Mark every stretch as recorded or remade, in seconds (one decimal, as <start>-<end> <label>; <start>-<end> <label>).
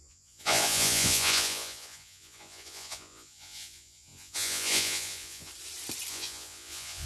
0.0-5.5 remade; 5.5-6.1 recorded; 6.1-7.1 remade